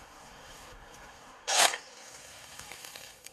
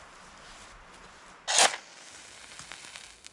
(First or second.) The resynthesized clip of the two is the first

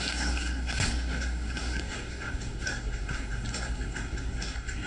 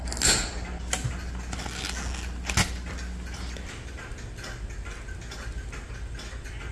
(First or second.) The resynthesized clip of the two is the first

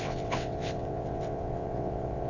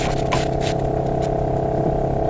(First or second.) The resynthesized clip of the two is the first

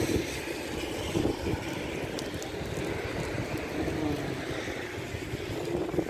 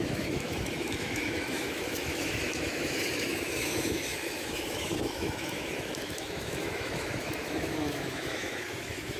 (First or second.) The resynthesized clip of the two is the second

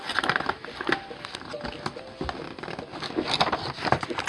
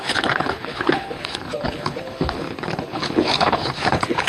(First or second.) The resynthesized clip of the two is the second